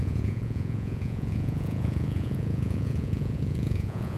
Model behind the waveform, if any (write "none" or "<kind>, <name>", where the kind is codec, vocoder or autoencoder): vocoder, Vocos